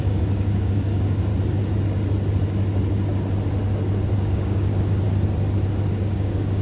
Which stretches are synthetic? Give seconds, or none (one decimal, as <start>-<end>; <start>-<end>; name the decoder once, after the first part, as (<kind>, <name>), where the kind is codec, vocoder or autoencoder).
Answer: 0.0-1.3 (codec, DAC); 4.3-4.7; 6.0-6.6